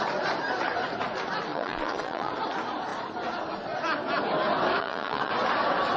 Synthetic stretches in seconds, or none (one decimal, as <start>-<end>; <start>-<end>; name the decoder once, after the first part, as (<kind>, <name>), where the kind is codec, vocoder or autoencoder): 1.5-2.3 (vocoder, Vocos); 4.8-5.3